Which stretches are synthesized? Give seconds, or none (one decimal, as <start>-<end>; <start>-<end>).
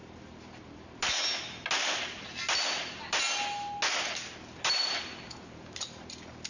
none